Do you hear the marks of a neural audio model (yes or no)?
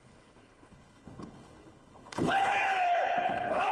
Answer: yes